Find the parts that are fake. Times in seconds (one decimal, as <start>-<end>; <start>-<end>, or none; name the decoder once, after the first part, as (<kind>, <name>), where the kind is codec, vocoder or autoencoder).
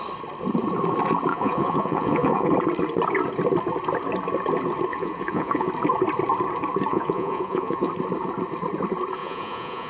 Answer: 1.3-2.5 (vocoder, Vocos); 4.9-5.7; 6.9-7.9; 9.2-9.9